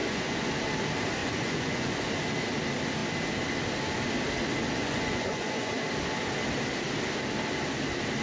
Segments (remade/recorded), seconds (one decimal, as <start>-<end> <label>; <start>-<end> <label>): 0.0-0.5 remade; 0.5-1.2 recorded; 1.2-2.1 remade; 2.1-4.8 recorded; 4.8-5.7 remade; 5.7-8.2 recorded